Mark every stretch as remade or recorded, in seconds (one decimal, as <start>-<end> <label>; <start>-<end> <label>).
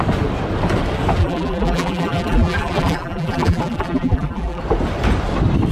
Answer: 0.0-1.2 recorded; 1.2-4.6 remade; 4.6-5.7 recorded